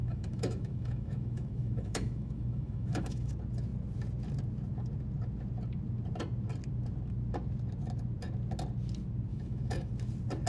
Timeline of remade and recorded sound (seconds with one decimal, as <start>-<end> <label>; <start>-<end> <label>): 0.0-3.3 remade; 3.3-9.3 recorded; 9.3-9.9 remade; 9.9-10.5 recorded